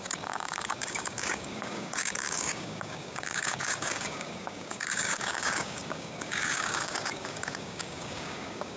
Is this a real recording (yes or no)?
no